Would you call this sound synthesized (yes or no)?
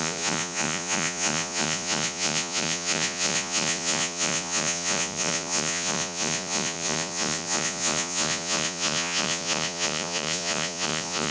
yes